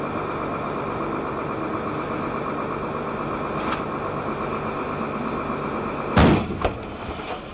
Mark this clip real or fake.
real